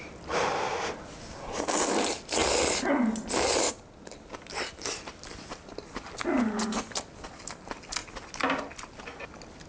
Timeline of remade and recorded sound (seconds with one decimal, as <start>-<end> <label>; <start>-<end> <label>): 0.0-9.7 recorded